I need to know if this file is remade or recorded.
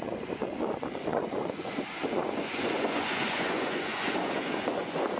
remade